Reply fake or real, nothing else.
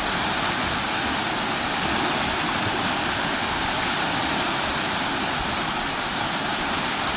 real